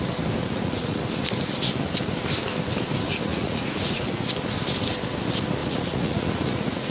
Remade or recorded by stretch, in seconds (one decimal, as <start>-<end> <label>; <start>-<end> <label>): 0.0-0.4 recorded; 0.4-1.0 remade; 1.0-3.3 recorded; 3.3-4.2 remade; 4.2-5.6 recorded; 5.6-6.9 remade